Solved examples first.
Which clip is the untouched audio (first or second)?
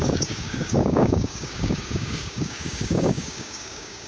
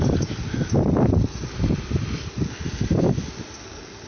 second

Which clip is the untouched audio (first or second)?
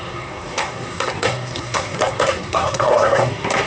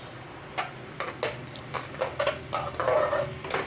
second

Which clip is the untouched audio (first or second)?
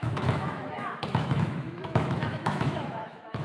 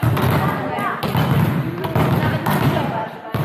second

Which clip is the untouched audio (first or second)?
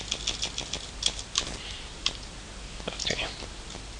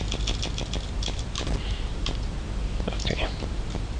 first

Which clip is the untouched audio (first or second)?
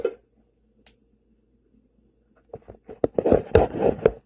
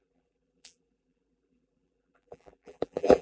first